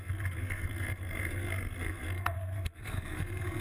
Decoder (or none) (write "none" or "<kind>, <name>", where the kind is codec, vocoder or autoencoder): codec, SNAC